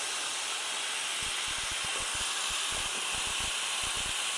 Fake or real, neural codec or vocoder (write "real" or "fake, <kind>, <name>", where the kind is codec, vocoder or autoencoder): real